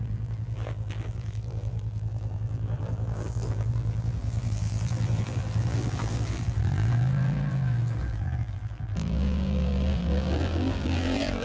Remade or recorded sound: remade